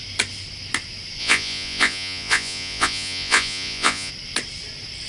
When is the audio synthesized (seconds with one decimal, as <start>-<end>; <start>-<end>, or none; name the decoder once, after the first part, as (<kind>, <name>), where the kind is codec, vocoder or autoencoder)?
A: 1.2-4.1 (vocoder, Vocos)